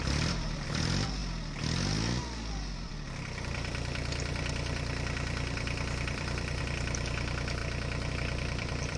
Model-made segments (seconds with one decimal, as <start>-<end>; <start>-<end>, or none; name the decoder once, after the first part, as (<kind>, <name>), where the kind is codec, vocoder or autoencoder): 0.0-1.2 (vocoder, BigVGAN v2); 2.1-7.6; 8.1-9.0